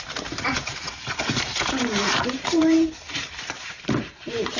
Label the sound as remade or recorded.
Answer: remade